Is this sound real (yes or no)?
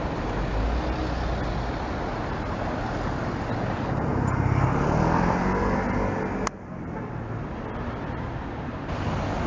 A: yes